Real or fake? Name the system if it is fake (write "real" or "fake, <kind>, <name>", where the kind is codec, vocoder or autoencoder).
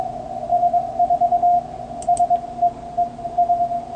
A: real